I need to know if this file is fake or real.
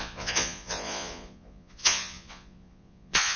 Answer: fake